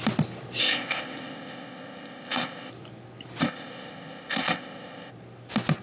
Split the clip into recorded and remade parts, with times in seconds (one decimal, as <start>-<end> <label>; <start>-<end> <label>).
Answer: 0.0-0.6 recorded; 0.6-2.7 remade; 2.7-3.4 recorded; 3.4-5.1 remade; 5.1-5.8 recorded